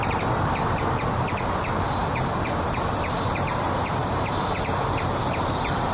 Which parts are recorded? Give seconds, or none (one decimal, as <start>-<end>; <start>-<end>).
0.9-2.0; 3.6-4.0; 5.1-5.9